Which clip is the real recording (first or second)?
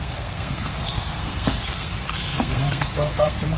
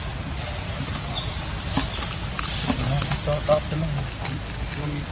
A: second